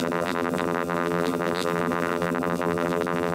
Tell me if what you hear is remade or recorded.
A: remade